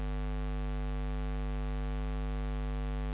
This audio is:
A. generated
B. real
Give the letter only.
B